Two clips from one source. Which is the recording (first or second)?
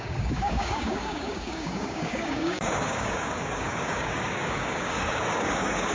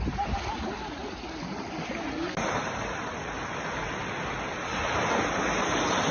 second